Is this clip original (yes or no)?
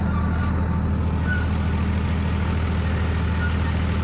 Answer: yes